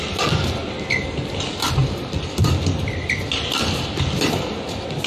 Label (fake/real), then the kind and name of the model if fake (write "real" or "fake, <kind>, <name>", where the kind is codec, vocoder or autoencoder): real